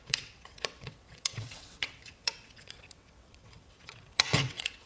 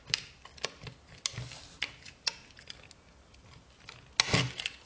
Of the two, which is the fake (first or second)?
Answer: first